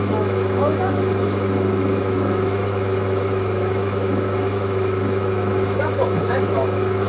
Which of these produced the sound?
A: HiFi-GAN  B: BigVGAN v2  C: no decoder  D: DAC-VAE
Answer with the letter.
D